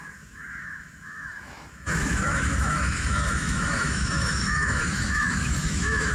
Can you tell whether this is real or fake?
fake